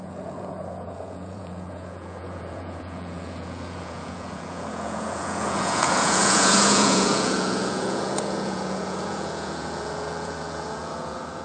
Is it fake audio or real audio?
fake